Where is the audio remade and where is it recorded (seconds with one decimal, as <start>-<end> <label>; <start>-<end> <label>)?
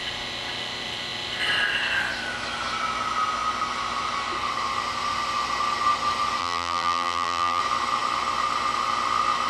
0.0-6.4 recorded; 6.4-7.6 remade; 7.6-9.5 recorded